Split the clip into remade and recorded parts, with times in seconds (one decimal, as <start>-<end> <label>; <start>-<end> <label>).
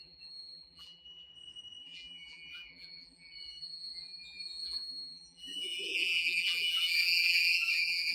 0.0-1.3 remade; 1.3-1.8 recorded; 1.8-8.1 remade